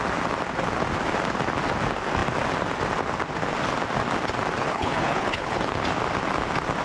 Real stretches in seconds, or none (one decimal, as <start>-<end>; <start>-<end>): 0.0-4.6; 5.6-6.8